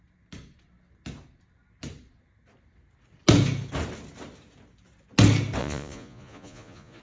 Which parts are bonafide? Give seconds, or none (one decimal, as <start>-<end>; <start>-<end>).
0.0-5.6